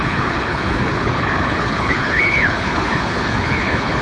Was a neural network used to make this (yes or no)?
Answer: yes